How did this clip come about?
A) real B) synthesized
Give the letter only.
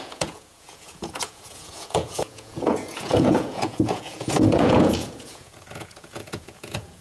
B